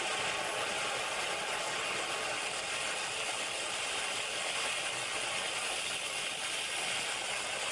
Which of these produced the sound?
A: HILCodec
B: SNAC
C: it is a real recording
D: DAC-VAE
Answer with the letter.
C